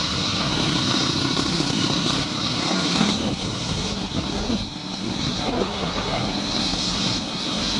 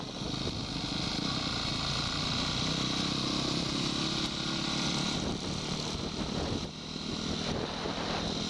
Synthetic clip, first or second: first